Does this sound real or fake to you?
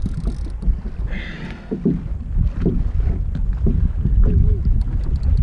real